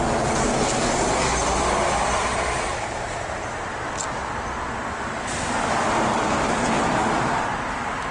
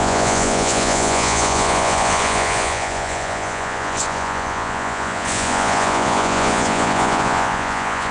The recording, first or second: first